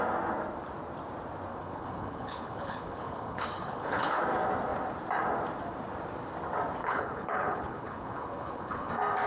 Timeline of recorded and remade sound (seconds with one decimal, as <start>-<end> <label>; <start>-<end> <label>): 0.0-1.5 recorded; 1.5-4.2 remade; 4.2-6.8 recorded; 6.8-8.9 remade; 8.9-9.3 recorded

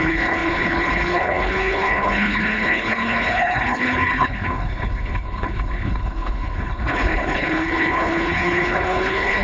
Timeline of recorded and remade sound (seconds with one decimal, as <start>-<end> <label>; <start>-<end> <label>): 0.0-9.4 remade